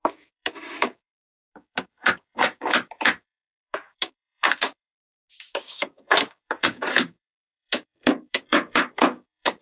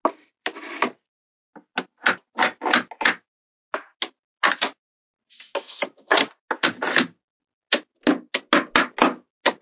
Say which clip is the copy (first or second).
first